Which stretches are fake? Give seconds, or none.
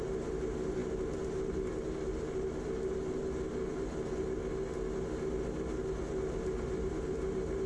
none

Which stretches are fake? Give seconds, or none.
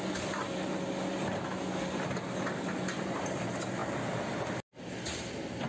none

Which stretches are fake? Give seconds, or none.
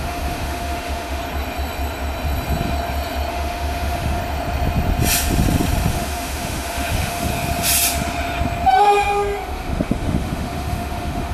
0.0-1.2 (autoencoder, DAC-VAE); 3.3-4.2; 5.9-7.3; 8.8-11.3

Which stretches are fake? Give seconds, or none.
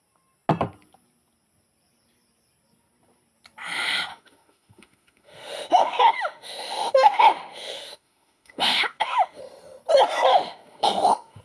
4.1-9.4 (autoencoder, DAC-VAE); 10.3-11.4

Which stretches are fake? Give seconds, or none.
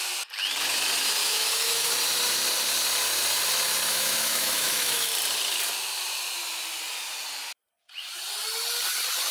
1.2-1.9 (autoencoder, DAC-VAE); 3.9-5.1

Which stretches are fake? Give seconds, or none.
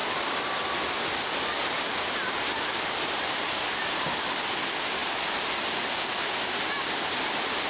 none